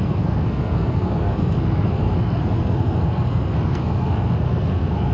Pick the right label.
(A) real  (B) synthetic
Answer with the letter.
B